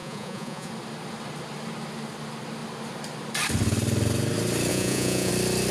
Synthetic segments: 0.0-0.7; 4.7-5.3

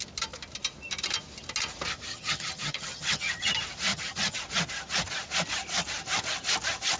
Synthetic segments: 2.1-3.5; 3.9-4.4

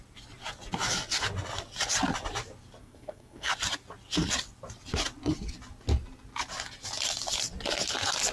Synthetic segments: 2.8-3.5

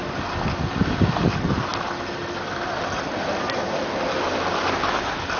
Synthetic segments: none

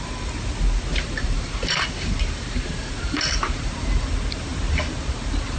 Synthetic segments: 0.9-3.7

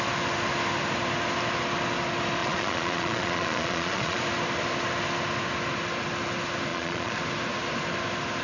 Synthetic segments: 2.4-4.2; 6.7-7.2

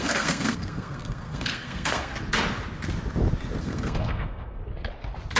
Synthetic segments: 0.0-2.1; 3.6-4.6